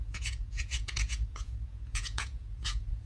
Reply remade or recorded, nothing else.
remade